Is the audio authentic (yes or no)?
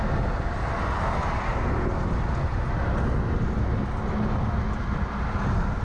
yes